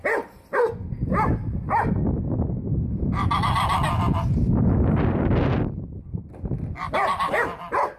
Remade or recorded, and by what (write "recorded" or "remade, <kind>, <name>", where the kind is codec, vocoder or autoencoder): recorded